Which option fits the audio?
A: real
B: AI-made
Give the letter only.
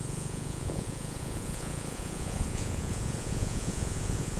B